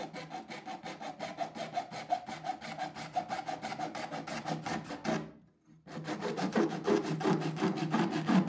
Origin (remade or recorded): recorded